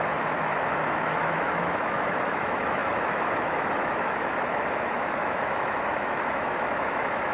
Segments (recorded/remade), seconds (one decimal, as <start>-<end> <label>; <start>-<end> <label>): 0.0-7.3 remade